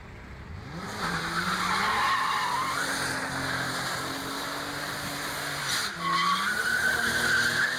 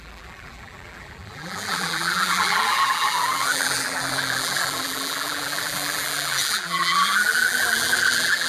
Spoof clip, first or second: second